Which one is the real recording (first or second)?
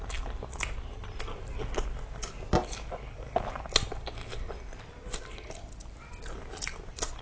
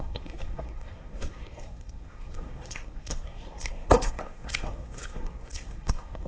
first